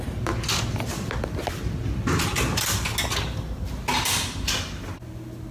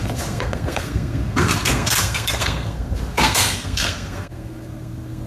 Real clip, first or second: first